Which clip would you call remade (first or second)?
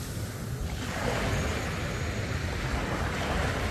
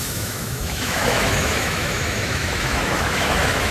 second